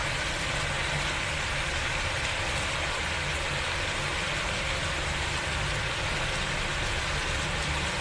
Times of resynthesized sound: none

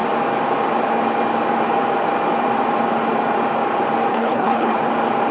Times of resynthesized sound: 4.1-4.8 (codec, HILCodec)

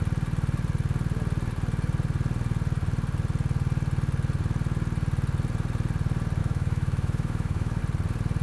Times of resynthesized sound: 6.4-7.8 (autoencoder, DAC-VAE)

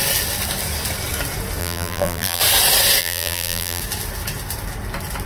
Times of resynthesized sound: 1.6-2.4 (vocoder, BigVGAN v2); 3.0-3.8

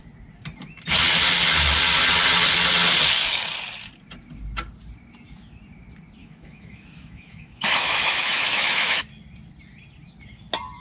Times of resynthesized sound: 6.2-9.0 (autoencoder, DAC-VAE)

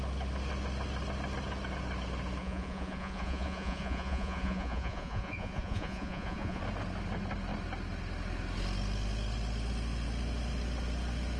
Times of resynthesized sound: 2.4-6.6 (vocoder, Vocos)